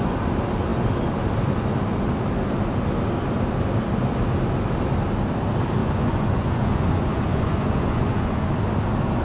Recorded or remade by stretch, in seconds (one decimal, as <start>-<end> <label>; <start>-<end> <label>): 0.0-5.8 recorded; 5.8-8.5 remade; 8.5-9.2 recorded